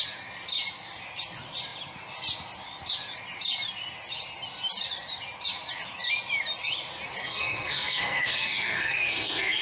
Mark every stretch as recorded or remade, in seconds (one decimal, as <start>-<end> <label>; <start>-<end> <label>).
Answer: 0.0-7.2 recorded; 7.2-9.6 remade